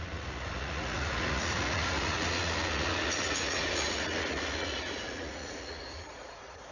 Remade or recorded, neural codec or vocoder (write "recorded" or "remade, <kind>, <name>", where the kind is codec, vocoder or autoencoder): remade, vocoder, Vocos